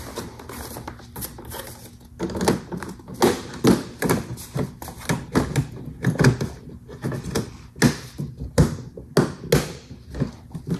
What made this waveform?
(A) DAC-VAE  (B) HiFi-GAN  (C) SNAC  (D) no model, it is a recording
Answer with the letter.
D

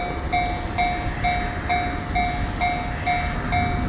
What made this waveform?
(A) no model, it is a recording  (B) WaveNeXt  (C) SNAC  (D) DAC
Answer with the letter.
A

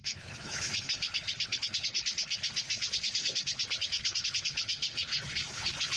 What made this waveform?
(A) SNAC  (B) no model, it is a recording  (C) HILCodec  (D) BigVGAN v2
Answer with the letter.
C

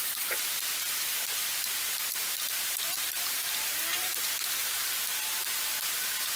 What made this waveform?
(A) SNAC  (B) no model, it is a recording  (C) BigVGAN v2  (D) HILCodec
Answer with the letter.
C